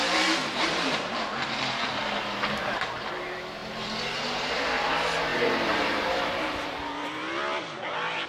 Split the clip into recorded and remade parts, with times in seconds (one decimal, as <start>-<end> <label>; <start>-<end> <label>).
0.0-3.1 remade; 3.1-3.6 recorded; 3.6-4.5 remade; 4.5-5.3 recorded; 5.3-6.3 remade; 6.3-8.3 recorded

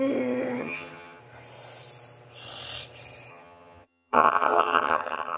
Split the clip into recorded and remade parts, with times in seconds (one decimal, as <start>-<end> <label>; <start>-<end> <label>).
0.0-0.6 recorded; 0.6-1.2 remade; 1.2-3.3 recorded; 3.3-5.4 remade

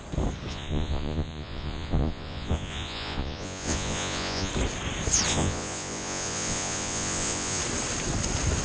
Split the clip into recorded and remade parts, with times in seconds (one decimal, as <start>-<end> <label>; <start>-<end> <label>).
0.0-0.5 recorded; 0.5-4.5 remade; 4.5-5.3 recorded; 5.3-7.6 remade; 7.6-8.6 recorded

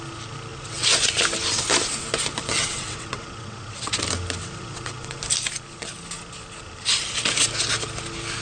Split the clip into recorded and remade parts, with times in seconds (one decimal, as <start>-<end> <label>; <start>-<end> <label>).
0.0-0.5 recorded; 0.5-1.1 remade; 1.1-2.6 recorded; 2.6-3.9 remade; 3.9-4.4 recorded; 4.4-5.2 remade; 5.2-8.4 recorded

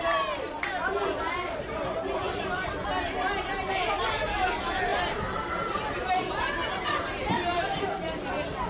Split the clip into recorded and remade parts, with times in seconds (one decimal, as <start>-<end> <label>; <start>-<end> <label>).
0.0-4.9 recorded; 4.9-7.9 remade; 7.9-8.7 recorded

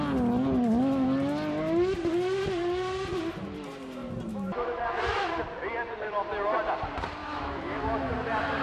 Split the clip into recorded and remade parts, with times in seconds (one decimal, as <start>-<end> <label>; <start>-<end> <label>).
0.0-4.3 recorded; 4.3-4.8 remade; 4.8-7.2 recorded; 7.2-8.1 remade; 8.1-8.6 recorded

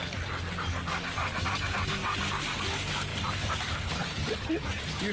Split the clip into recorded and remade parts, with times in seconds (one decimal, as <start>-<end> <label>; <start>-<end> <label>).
0.0-5.1 recorded